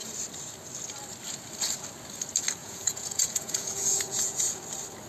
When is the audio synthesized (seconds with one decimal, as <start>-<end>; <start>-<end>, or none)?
2.6-4.6